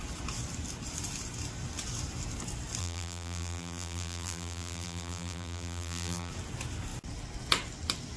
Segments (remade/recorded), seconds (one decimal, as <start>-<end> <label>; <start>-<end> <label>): 0.0-2.8 recorded; 2.8-6.3 remade; 6.3-8.2 recorded